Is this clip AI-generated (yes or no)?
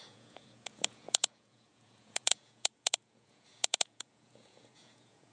yes